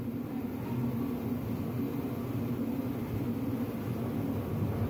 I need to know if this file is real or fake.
real